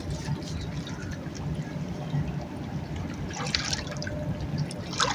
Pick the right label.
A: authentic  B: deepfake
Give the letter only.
A